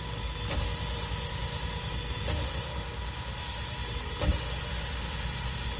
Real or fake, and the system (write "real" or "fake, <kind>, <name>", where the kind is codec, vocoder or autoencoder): real